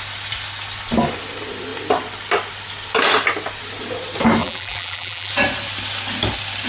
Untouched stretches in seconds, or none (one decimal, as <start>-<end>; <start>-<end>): 0.0-4.4; 5.3-6.7